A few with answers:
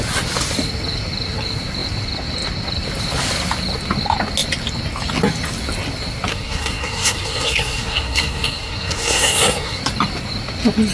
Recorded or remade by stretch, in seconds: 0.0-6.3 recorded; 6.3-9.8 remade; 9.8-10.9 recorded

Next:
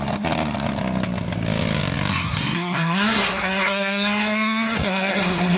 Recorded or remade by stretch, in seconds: 0.0-2.1 recorded; 2.1-5.6 remade

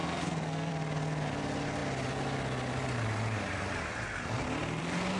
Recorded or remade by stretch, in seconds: 0.0-0.7 remade; 0.7-5.2 recorded

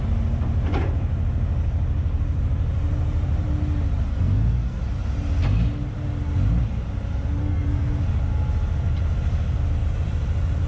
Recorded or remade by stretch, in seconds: 0.0-4.1 recorded; 4.1-4.8 remade; 4.8-7.4 recorded; 7.4-7.9 remade; 7.9-10.7 recorded

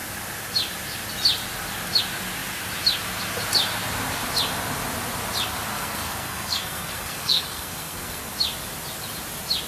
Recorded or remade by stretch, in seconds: 0.0-5.7 recorded; 5.7-8.3 remade; 8.3-9.7 recorded

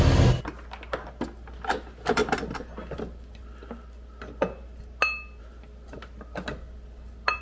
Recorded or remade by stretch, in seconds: 0.0-7.4 recorded